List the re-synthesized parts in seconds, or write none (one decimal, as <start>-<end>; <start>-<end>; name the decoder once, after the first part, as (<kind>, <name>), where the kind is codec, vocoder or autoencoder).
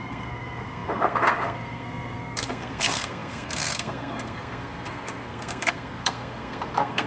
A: 0.0-7.1 (codec, SNAC)